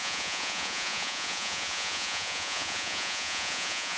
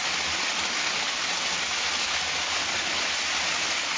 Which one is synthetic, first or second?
first